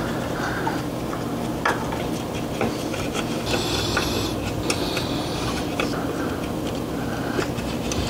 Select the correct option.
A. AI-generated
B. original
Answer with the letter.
B